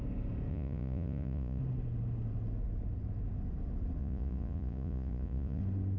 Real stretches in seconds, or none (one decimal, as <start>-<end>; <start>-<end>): 0.0-0.5; 1.6-4.0; 5.6-6.0